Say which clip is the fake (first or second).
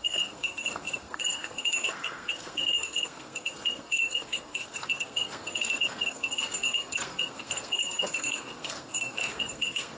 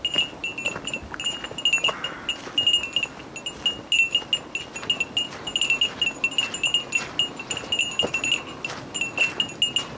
first